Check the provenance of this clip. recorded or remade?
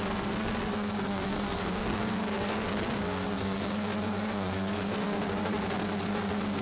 remade